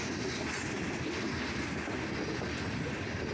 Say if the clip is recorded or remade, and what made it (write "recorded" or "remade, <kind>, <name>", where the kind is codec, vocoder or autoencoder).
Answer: recorded